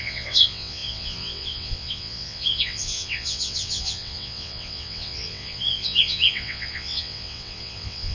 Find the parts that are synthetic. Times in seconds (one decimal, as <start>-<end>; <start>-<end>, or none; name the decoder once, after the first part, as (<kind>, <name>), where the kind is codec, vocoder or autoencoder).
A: 0.0-8.1 (vocoder, WaveNeXt)